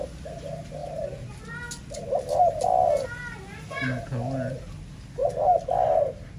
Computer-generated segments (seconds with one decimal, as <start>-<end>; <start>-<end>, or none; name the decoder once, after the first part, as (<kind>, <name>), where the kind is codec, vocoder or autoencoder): none